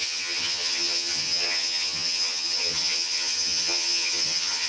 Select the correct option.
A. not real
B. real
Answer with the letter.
A